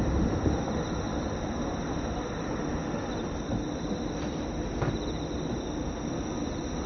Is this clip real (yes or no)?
yes